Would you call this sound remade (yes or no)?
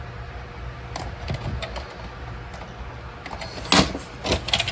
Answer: no